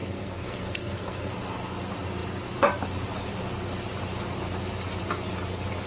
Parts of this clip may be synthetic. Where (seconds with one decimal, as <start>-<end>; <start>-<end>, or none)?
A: 0.0-1.3